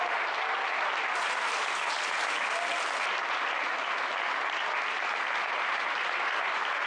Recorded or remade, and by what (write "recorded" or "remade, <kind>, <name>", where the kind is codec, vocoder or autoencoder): recorded